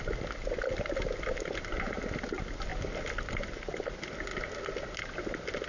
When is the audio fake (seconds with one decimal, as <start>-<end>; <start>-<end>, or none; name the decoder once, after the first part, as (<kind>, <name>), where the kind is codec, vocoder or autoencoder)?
none